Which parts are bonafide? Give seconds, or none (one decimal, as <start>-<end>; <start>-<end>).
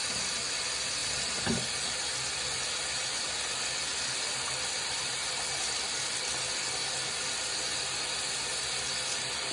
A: 0.0-9.5